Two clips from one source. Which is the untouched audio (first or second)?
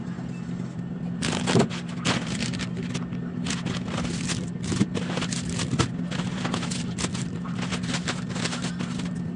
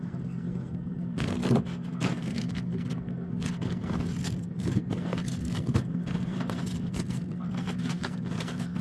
first